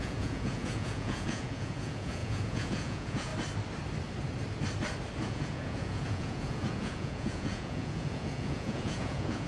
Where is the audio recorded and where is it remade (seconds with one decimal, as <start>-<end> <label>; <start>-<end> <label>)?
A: 0.0-3.3 remade; 3.3-5.2 recorded; 5.2-9.5 remade